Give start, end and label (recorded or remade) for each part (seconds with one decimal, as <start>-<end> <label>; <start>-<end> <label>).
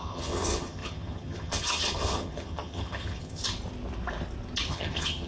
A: 0.0-3.4 remade; 3.4-4.7 recorded; 4.7-5.3 remade